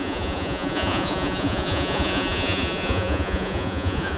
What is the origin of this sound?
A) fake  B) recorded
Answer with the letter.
A